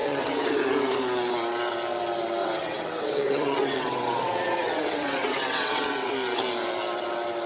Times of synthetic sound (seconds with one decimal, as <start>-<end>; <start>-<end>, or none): 0.0-0.5; 2.4-6.1